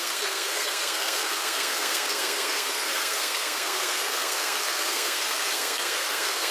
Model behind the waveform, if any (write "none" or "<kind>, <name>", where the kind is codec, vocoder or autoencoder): codec, SNAC